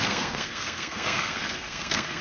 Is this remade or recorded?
remade